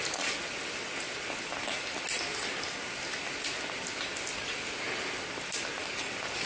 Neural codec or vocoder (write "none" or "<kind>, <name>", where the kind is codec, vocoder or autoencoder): none